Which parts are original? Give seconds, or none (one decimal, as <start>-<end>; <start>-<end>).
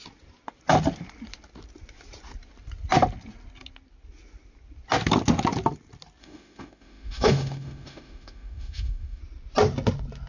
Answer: 0.0-6.2; 9.2-10.3